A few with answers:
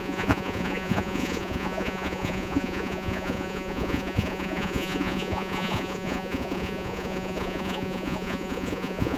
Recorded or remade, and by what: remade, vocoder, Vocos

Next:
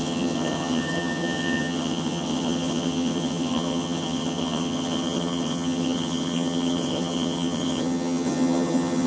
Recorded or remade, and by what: remade, vocoder, HiFi-GAN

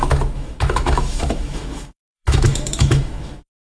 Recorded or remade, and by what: remade, autoencoder, DAC-VAE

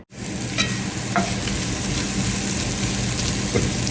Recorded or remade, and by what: recorded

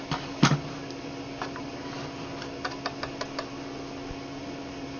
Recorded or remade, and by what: recorded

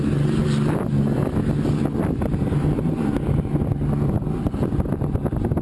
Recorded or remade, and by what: recorded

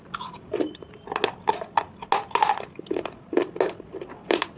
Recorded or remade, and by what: recorded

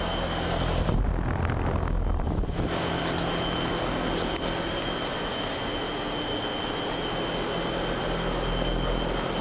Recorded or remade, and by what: recorded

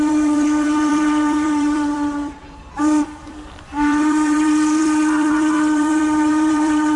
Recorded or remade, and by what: remade, vocoder, BigVGAN v2